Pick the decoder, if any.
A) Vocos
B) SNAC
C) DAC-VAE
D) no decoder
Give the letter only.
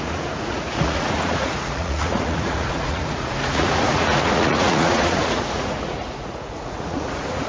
A